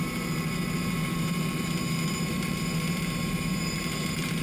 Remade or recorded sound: remade